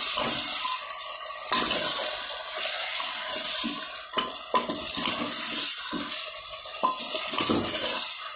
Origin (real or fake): real